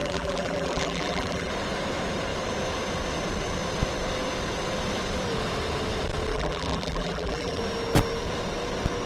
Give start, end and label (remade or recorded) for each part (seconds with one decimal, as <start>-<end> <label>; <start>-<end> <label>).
0.0-1.5 remade; 1.5-6.3 recorded; 6.3-7.6 remade; 7.6-9.1 recorded